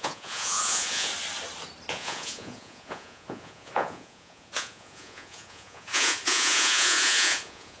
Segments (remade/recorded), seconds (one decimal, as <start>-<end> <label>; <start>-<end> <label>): 0.0-1.1 remade; 1.1-1.9 recorded; 1.9-7.8 remade